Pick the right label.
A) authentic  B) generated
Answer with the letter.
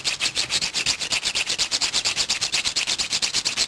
A